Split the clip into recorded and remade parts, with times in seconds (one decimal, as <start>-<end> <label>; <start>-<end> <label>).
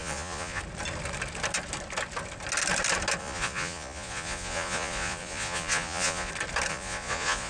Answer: 0.0-0.6 remade; 0.6-3.2 recorded; 3.2-6.3 remade; 6.3-6.7 recorded; 6.7-7.5 remade